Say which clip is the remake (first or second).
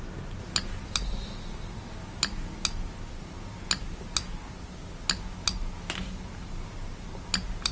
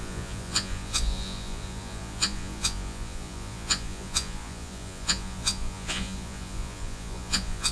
second